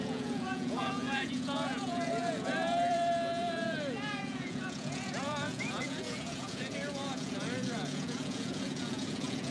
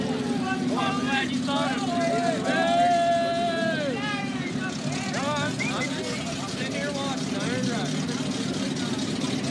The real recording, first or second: second